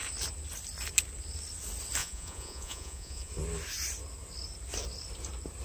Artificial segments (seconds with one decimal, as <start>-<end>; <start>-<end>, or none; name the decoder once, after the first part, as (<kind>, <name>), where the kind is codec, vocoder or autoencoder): 2.0-3.3 (vocoder, Vocos)